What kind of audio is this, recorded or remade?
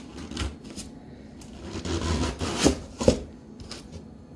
recorded